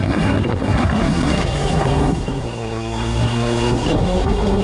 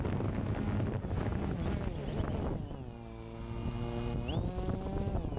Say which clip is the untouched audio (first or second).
second